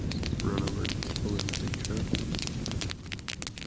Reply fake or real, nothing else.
real